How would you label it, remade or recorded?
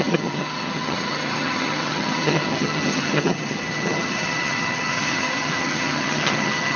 remade